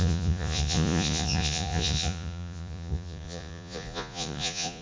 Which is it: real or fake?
fake